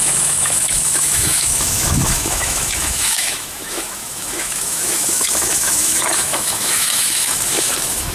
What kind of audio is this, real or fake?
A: fake